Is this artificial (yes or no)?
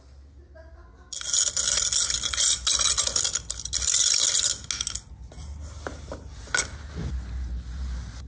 no